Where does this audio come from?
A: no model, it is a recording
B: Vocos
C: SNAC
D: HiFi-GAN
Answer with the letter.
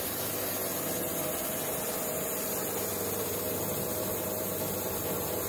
A